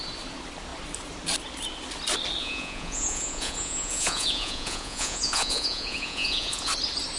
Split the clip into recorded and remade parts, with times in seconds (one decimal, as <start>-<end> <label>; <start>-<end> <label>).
0.0-2.4 recorded; 2.4-6.7 remade; 6.7-7.2 recorded